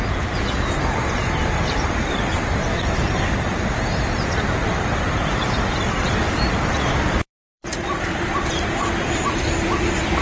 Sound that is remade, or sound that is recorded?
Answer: remade